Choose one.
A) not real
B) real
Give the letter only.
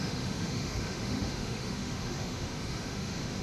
A